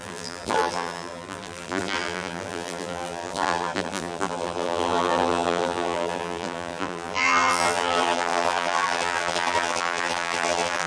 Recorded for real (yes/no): no